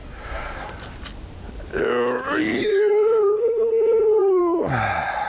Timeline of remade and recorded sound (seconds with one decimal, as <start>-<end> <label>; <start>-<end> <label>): 0.0-0.7 remade; 0.7-2.6 recorded; 2.6-4.4 remade; 4.4-5.3 recorded